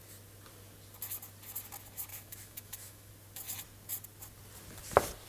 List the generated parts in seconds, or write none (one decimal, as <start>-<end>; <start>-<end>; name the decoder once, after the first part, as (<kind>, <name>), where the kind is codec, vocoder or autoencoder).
2.1-3.1 (autoencoder, DAC-VAE)